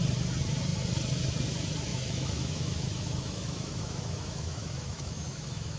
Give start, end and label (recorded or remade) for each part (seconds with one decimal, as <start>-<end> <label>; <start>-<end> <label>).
0.0-1.9 recorded; 1.9-5.8 remade